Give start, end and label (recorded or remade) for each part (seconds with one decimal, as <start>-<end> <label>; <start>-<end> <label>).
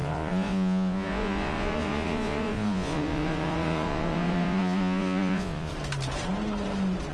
0.0-5.7 remade; 5.7-7.1 recorded